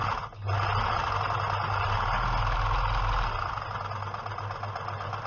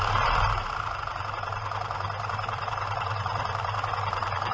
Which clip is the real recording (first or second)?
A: first